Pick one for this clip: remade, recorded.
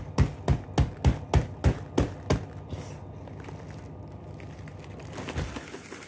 recorded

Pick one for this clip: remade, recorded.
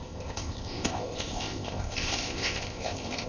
remade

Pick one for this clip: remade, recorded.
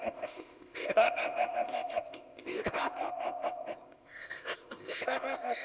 remade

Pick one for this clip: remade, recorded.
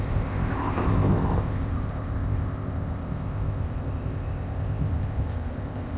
remade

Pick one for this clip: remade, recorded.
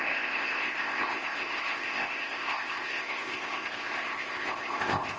remade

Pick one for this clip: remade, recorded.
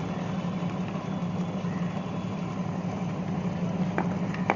recorded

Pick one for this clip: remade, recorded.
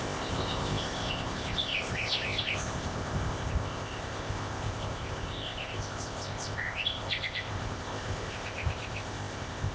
remade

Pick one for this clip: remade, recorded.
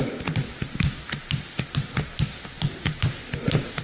recorded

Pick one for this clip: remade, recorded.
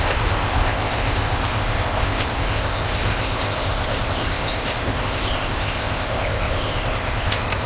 remade